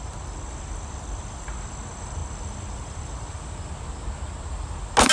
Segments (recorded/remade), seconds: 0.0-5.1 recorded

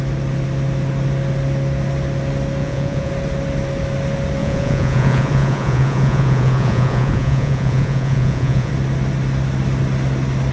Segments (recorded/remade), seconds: 0.0-2.6 recorded; 2.6-3.1 remade; 3.1-4.4 recorded; 4.4-8.7 remade; 8.7-10.5 recorded

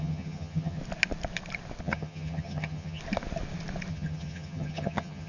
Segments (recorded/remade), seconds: 0.0-0.8 remade; 0.8-1.8 recorded; 1.8-3.0 remade; 3.0-3.9 recorded; 3.9-5.3 remade

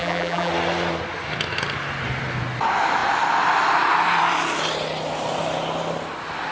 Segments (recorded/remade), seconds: 0.0-0.5 remade; 0.5-6.5 recorded

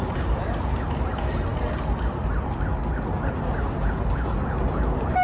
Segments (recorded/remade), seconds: 0.0-5.2 recorded